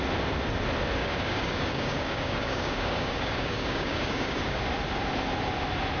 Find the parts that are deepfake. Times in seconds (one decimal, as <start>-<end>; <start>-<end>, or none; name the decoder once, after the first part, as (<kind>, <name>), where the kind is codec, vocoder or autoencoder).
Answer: 1.0-4.6 (codec, DAC)